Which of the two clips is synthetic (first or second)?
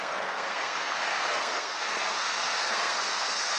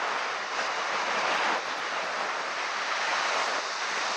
first